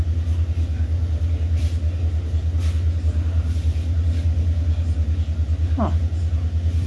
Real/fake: real